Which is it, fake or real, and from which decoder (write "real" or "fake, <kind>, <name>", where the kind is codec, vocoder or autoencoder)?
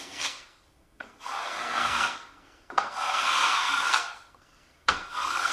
fake, codec, SNAC